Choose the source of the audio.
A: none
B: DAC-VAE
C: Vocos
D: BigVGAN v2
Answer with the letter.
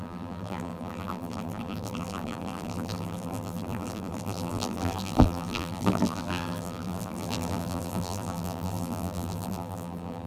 D